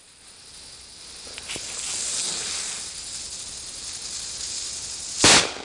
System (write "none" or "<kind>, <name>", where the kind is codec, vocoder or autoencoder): none